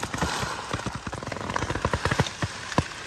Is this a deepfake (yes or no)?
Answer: no